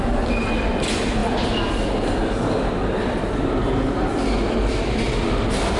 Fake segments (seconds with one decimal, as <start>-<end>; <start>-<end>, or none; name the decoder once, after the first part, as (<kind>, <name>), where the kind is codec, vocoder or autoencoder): none